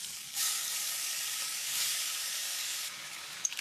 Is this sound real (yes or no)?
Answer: no